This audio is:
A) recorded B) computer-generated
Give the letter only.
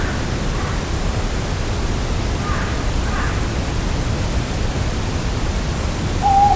A